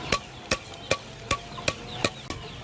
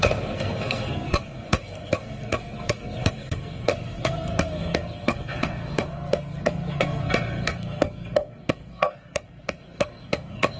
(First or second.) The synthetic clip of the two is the second